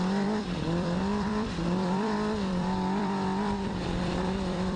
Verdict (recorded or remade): remade